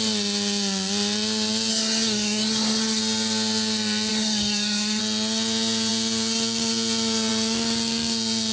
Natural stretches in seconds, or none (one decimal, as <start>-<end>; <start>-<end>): 0.0-1.7; 3.0-4.1; 5.0-8.5